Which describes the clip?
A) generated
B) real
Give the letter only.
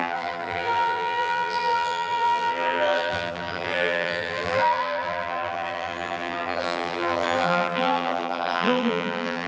A